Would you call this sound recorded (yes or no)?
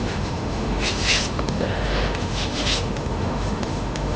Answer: no